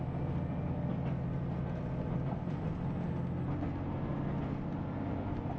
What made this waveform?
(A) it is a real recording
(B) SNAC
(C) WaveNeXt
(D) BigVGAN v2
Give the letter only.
A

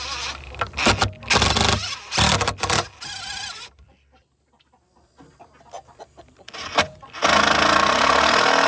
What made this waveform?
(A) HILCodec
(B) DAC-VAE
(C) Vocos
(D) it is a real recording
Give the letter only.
D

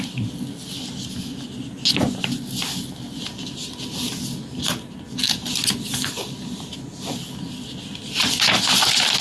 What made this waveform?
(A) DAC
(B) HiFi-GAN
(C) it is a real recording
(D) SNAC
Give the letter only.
C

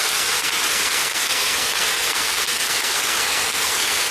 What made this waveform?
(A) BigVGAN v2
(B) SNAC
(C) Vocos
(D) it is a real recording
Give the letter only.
B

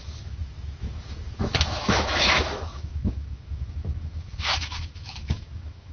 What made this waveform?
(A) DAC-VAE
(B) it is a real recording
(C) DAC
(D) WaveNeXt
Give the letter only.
A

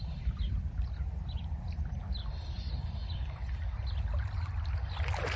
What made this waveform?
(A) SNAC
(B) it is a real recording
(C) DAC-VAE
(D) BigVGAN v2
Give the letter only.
B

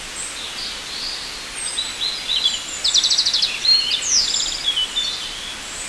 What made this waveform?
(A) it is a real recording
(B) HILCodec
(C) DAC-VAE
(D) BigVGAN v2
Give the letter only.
A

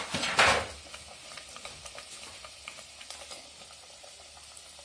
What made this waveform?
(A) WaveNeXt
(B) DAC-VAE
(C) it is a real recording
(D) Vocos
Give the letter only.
C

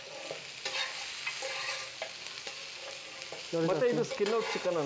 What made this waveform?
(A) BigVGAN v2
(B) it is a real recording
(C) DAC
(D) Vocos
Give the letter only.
B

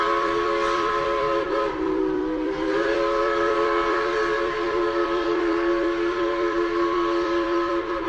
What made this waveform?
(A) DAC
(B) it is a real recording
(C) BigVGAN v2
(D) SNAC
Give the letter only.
C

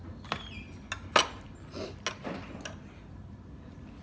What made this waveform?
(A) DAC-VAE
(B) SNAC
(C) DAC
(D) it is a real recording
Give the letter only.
D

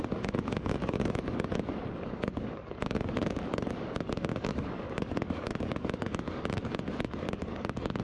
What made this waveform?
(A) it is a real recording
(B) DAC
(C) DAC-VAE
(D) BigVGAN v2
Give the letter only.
B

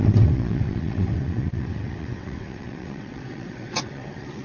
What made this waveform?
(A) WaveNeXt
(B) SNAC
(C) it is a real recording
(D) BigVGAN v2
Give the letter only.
A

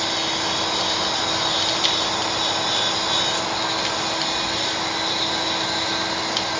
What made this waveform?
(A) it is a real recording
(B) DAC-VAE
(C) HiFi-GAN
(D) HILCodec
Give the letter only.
A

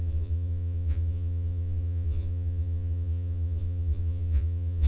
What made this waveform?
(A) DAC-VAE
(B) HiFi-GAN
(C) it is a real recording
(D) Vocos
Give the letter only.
D